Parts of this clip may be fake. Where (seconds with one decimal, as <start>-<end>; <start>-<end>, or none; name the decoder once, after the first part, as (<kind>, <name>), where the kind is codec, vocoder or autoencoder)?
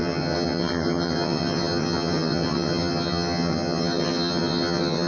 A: 0.0-5.1 (vocoder, HiFi-GAN)